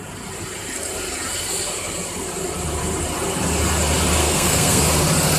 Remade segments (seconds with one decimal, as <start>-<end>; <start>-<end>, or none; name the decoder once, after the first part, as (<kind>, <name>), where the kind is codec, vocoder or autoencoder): 4.2-4.8 (codec, SNAC)